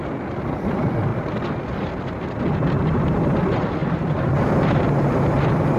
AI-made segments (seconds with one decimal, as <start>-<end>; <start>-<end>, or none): 3.8-5.8